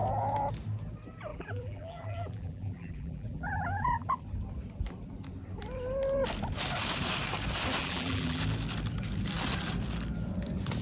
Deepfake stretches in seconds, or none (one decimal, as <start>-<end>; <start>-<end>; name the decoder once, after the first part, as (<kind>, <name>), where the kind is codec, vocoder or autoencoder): 1.3-4.2 (vocoder, BigVGAN v2); 7.8-8.4